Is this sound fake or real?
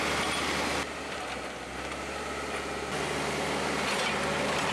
real